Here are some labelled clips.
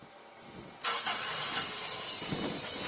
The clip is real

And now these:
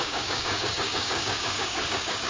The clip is fake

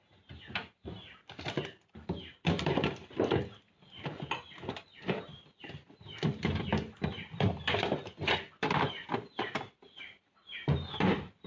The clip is fake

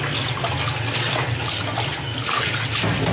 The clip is real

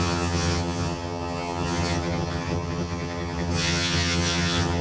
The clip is fake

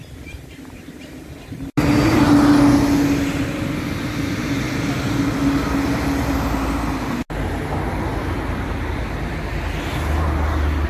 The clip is real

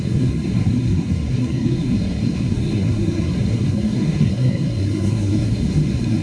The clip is fake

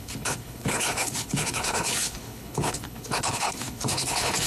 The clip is fake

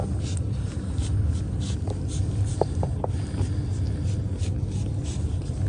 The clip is real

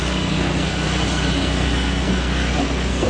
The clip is fake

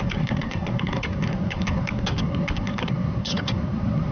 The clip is fake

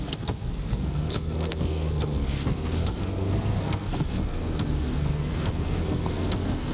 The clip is fake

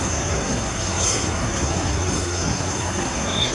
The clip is fake